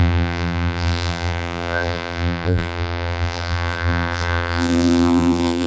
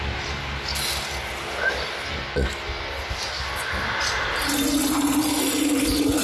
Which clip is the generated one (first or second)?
first